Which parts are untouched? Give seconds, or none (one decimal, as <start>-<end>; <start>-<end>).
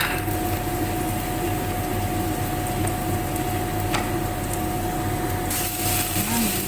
0.0-6.7